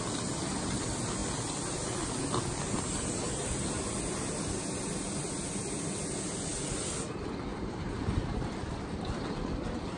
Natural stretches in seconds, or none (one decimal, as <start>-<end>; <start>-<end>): 0.0-7.5; 9.2-10.0